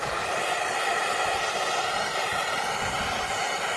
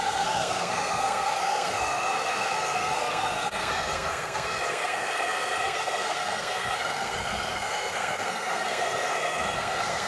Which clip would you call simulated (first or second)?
second